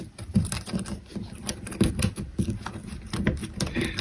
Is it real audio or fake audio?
real